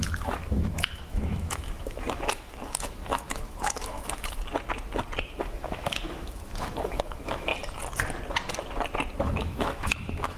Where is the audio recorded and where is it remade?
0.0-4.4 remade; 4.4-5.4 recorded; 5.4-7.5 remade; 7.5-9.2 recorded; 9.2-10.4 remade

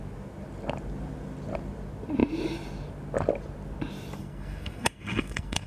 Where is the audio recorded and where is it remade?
0.0-4.2 recorded; 4.2-5.7 remade

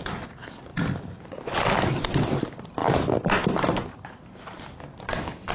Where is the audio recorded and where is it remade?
0.0-5.5 recorded

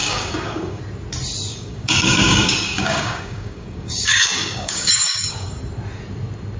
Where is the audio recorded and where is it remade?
0.0-0.8 remade; 0.8-1.5 recorded; 1.5-5.5 remade; 5.5-6.6 recorded

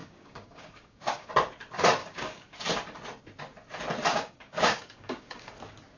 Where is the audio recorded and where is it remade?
0.0-1.3 remade; 1.3-2.0 recorded; 2.0-2.6 remade; 2.6-4.1 recorded; 4.1-5.5 remade; 5.5-6.0 recorded